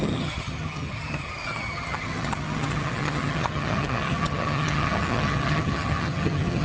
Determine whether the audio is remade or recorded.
remade